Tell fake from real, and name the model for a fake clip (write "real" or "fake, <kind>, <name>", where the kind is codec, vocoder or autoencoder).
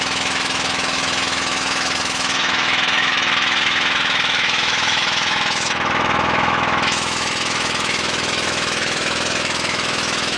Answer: fake, autoencoder, DAC-VAE